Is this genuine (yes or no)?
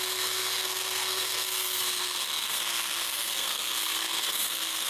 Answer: no